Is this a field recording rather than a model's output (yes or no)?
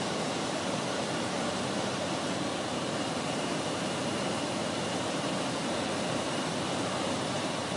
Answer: no